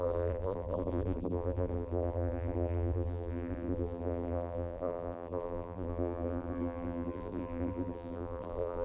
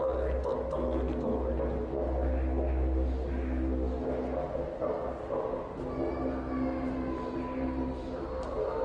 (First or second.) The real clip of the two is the second